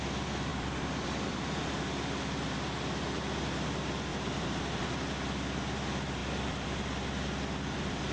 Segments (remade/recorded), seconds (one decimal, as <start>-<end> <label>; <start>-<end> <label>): 0.0-0.5 recorded; 0.5-1.7 remade; 1.7-4.1 recorded; 4.1-4.9 remade; 4.9-6.2 recorded; 6.2-8.1 remade